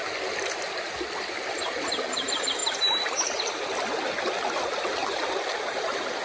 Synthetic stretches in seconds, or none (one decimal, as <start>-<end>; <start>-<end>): 5.0-6.2